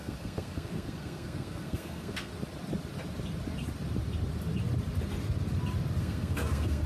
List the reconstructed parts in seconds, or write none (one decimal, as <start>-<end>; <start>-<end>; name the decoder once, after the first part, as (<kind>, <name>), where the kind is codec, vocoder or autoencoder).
0.0-2.3 (codec, SNAC); 6.0-6.9